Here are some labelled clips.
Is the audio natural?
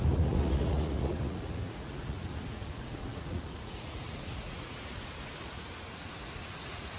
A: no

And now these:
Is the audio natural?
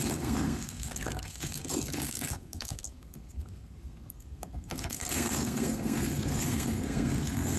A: no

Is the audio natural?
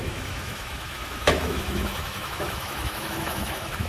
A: no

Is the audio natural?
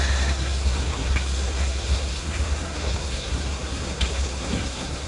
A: no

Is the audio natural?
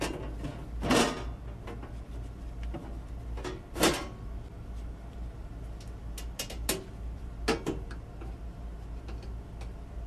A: yes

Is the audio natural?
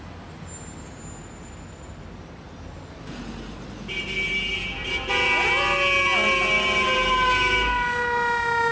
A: yes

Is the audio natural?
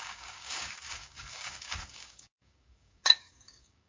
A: no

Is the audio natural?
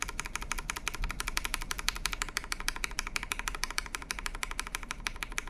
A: no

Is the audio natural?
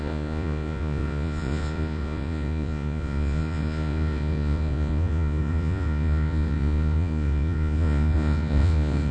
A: no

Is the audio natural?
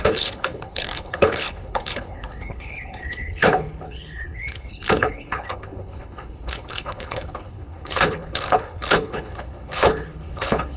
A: no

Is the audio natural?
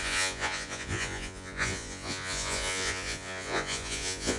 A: no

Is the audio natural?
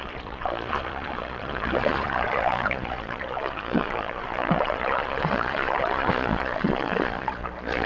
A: no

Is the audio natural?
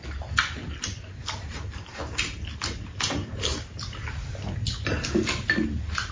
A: yes